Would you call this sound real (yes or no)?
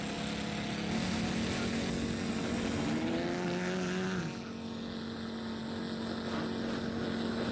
yes